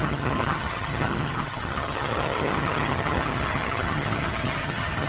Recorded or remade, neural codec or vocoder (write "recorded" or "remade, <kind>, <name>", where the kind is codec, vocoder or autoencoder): remade, vocoder, HiFi-GAN